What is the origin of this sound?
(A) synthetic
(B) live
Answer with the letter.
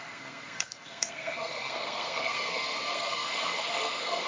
A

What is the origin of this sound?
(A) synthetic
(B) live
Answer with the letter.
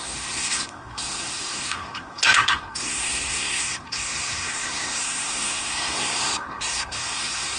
A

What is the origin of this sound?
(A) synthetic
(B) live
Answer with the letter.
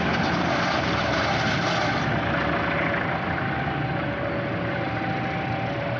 B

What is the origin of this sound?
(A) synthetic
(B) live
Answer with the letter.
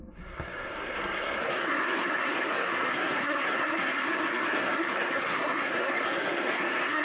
A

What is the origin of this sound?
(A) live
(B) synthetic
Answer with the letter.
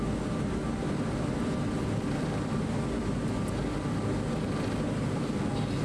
A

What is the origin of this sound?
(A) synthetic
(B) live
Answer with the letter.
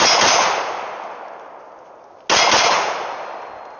B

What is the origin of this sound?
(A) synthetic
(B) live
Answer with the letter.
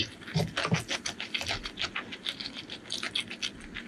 B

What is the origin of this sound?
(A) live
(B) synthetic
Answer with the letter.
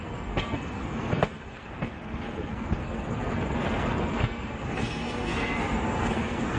B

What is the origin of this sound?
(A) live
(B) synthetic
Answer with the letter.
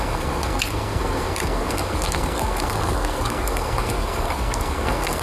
B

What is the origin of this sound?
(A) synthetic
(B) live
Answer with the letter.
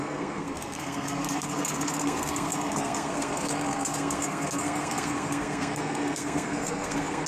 A